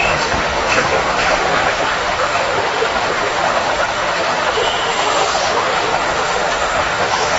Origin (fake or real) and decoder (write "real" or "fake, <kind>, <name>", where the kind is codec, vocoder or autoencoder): fake, autoencoder, DAC-VAE